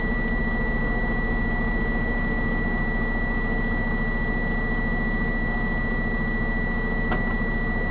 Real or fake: real